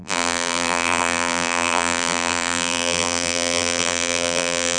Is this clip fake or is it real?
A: fake